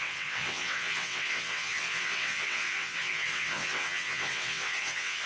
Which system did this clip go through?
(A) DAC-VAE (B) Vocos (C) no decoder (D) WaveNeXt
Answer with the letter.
D